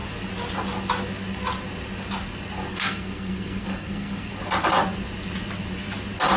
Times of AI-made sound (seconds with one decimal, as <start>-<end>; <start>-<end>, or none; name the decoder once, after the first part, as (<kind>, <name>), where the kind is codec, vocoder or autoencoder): 2.7-4.3 (codec, SNAC)